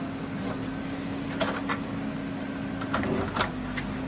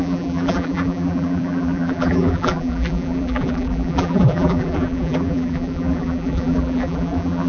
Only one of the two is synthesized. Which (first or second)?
second